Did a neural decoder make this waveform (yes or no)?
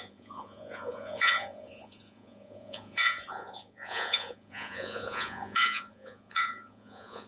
yes